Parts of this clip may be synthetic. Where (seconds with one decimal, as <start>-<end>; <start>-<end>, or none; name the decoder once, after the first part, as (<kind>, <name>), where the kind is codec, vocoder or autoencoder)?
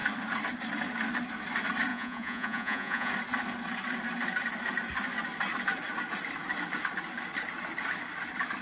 1.9-3.1 (vocoder, Vocos)